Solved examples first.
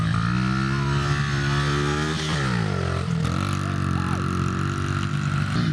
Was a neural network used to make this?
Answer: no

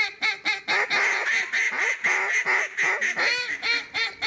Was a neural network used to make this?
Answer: no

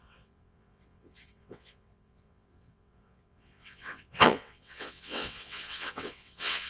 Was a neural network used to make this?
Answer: yes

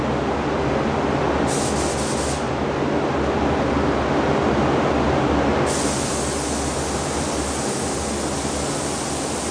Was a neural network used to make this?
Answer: no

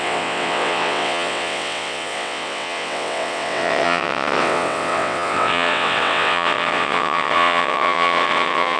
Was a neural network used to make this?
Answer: yes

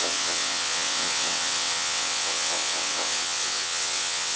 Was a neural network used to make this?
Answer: yes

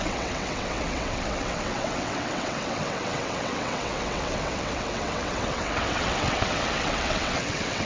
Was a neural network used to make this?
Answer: yes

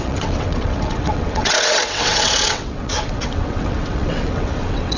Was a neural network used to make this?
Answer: yes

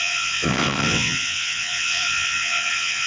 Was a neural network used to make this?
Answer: yes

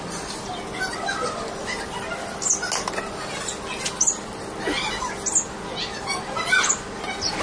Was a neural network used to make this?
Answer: no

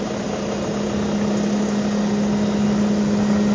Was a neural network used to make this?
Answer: no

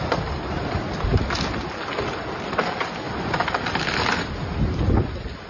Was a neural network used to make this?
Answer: no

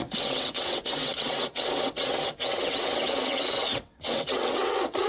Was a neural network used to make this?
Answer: yes